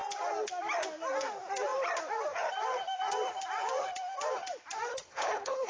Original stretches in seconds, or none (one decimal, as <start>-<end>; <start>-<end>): 0.0-4.9